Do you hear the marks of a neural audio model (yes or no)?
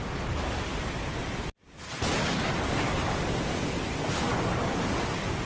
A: no